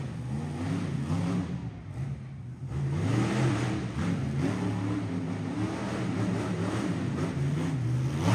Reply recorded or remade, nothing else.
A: recorded